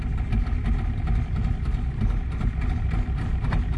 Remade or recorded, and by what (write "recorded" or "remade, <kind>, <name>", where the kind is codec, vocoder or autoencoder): recorded